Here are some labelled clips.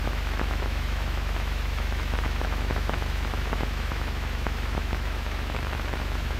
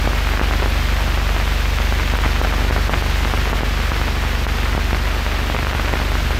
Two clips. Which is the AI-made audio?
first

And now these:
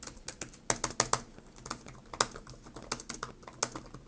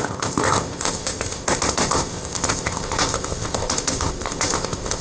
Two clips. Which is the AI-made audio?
second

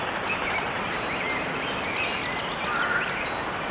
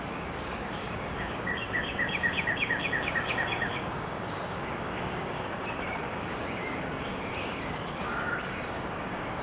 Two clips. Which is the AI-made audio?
second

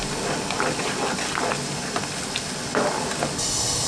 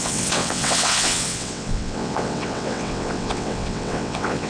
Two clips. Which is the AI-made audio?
second